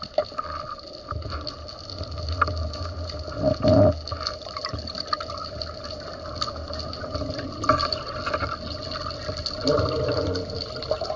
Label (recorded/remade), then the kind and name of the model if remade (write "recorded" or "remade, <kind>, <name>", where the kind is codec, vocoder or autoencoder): recorded